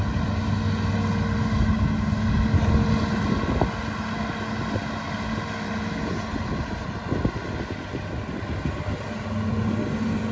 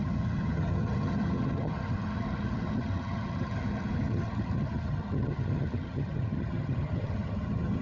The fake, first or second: second